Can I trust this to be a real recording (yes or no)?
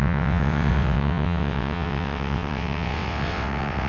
no